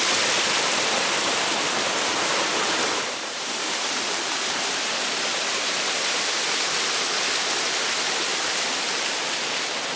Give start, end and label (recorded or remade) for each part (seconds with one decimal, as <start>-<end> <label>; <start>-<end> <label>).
0.0-2.5 recorded; 2.5-4.7 remade; 4.7-8.3 recorded; 8.3-8.9 remade; 8.9-10.0 recorded